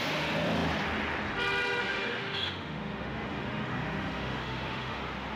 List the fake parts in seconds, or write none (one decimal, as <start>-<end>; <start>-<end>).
1.8-5.0